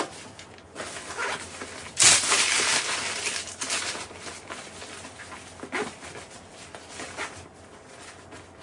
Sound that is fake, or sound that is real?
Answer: real